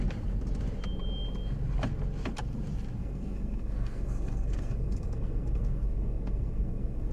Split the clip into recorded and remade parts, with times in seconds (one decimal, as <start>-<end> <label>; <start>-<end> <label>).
0.0-3.0 recorded; 3.0-7.1 remade